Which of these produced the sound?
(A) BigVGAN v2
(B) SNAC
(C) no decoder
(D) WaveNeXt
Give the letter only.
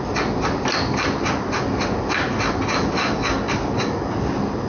C